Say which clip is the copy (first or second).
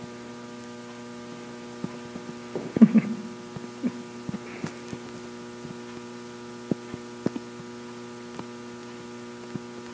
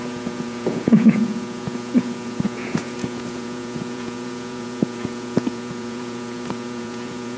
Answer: second